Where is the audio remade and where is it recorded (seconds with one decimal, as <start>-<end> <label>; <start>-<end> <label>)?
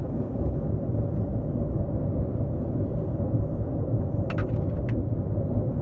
0.0-0.7 remade; 0.7-5.8 recorded